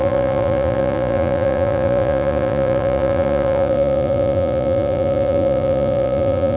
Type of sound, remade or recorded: remade